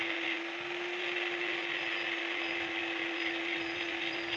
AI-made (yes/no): no